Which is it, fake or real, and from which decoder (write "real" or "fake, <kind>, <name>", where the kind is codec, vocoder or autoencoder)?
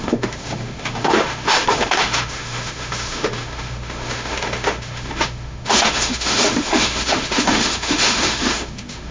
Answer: fake, autoencoder, DAC-VAE